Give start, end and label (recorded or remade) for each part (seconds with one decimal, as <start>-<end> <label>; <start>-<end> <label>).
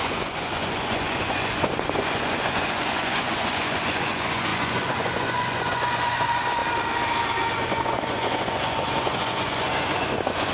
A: 0.0-6.6 remade; 6.6-7.5 recorded; 7.5-10.5 remade